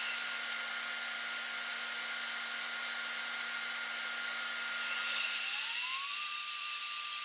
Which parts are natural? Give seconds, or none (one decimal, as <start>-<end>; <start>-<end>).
0.0-6.1; 6.8-7.2